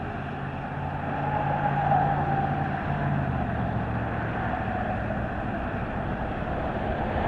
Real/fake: real